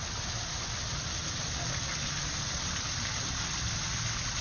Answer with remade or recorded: recorded